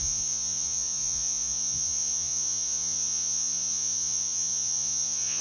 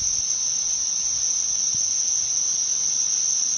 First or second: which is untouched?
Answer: second